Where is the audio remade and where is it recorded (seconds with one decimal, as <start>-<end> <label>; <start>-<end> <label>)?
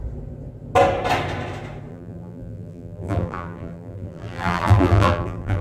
0.0-1.9 recorded; 1.9-5.6 remade